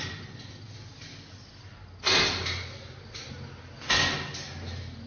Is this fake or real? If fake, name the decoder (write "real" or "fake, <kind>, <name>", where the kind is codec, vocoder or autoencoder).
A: real